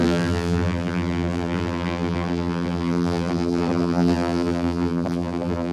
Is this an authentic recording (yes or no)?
no